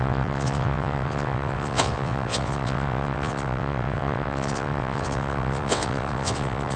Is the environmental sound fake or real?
fake